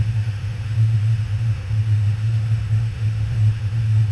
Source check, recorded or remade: remade